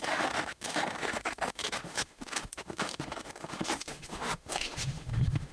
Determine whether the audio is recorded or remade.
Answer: remade